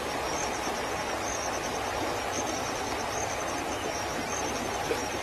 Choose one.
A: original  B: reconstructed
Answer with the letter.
A